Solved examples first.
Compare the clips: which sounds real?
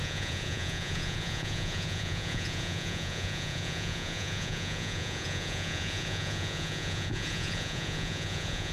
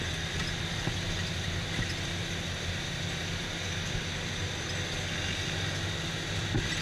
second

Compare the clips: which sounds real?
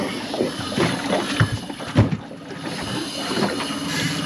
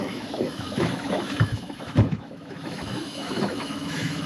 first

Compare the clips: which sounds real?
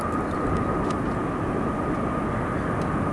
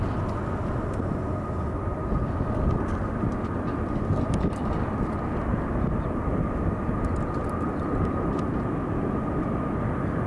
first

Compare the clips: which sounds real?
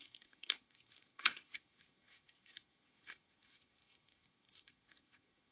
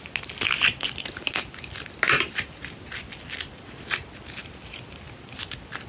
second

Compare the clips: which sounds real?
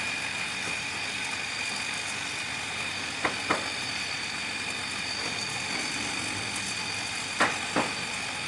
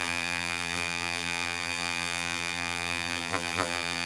first